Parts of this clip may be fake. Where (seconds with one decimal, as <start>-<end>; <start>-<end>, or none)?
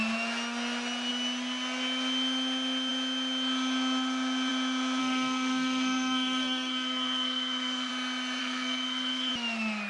5.0-7.9; 8.4-9.3